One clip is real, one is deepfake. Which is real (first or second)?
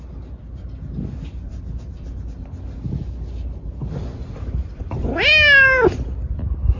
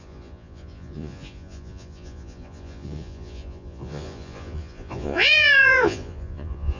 first